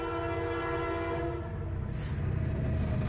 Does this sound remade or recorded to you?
recorded